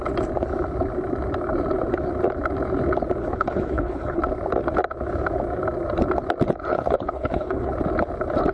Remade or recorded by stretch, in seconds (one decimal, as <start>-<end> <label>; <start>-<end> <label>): 0.0-3.2 recorded; 3.2-4.2 remade; 4.2-6.7 recorded; 6.7-7.7 remade; 7.7-8.5 recorded